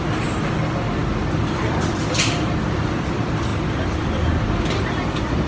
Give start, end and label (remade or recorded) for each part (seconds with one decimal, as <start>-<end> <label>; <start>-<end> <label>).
0.0-5.5 recorded